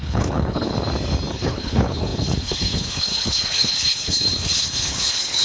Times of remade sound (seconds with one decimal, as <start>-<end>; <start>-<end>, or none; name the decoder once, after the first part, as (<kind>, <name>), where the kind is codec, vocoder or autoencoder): 0.0-0.7 (codec, HILCodec); 1.3-5.4